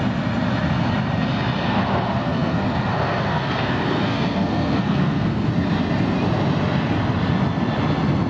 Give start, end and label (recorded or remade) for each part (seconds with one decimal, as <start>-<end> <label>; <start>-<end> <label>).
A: 0.0-1.6 recorded; 1.6-5.5 remade; 5.5-8.3 recorded